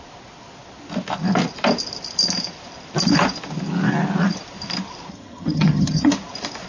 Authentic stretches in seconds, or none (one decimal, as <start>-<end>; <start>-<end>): 0.0-5.1; 6.1-6.7